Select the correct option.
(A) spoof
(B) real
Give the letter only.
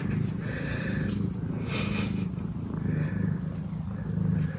B